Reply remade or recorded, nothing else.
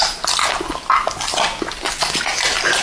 recorded